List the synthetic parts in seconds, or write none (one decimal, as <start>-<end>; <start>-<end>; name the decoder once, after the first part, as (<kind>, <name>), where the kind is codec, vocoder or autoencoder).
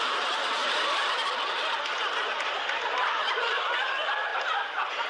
none